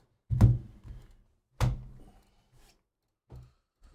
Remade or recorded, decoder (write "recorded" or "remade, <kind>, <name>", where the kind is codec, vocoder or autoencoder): recorded